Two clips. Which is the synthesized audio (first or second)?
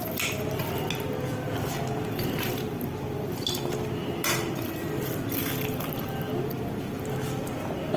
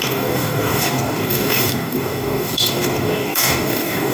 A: second